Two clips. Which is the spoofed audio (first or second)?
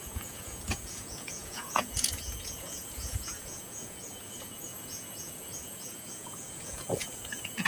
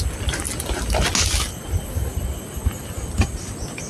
first